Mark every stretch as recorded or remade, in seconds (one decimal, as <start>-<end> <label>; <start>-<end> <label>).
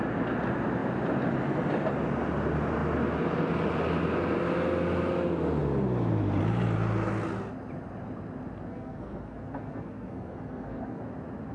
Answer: 0.0-8.7 recorded; 8.7-11.0 remade; 11.0-11.5 recorded